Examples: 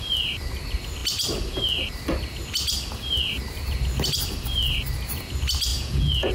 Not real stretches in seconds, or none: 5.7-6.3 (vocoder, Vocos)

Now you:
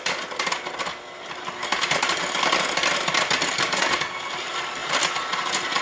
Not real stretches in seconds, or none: none

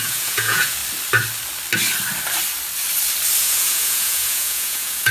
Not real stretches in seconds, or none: 0.0-0.8 (vocoder, Vocos); 3.4-5.1

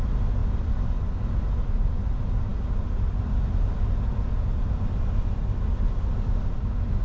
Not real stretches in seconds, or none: none

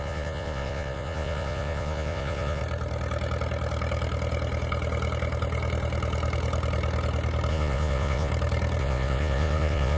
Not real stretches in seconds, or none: 0.0-2.6 (vocoder, Vocos); 7.5-8.3; 8.8-10.0